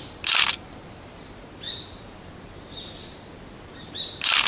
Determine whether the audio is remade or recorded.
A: recorded